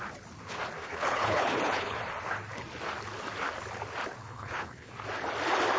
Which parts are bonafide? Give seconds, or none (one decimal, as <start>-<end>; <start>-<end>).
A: 0.0-0.8; 2.0-4.2; 4.9-5.8